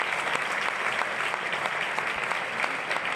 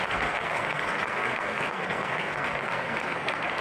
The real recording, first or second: first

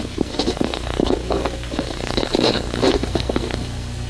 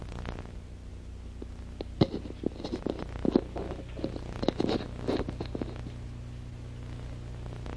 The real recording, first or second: second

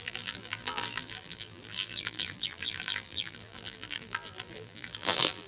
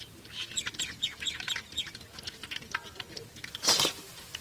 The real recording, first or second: second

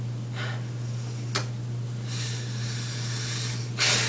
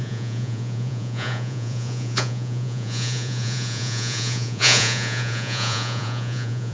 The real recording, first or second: first